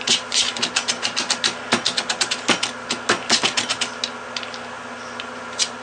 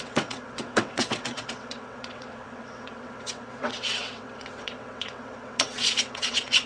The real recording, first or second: first